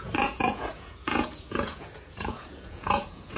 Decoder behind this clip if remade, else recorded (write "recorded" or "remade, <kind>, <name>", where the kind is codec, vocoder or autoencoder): remade, vocoder, Vocos